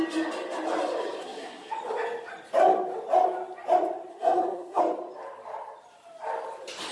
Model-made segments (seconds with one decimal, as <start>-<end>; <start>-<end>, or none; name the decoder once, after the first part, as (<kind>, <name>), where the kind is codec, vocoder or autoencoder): 1.2-1.7 (codec, SNAC); 4.1-4.8